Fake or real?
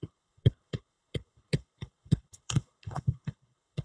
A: fake